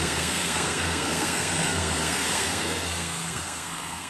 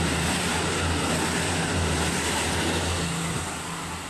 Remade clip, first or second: first